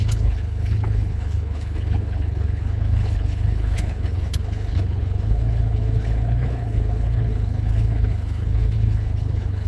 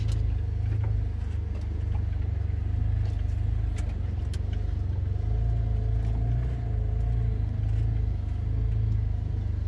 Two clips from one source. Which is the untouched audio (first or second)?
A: second